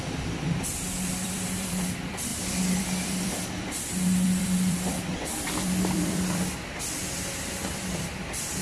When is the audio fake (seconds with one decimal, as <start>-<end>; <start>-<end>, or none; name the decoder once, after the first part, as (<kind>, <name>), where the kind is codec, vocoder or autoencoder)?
0.0-2.3 (vocoder, BigVGAN v2); 2.8-8.6